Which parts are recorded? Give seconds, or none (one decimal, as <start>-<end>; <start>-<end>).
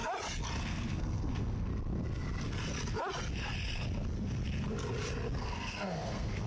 0.0-0.6; 1.7-5.4